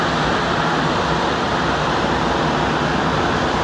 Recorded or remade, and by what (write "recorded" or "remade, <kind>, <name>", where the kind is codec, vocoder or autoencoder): recorded